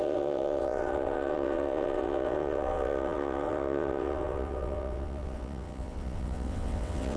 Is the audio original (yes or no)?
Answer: no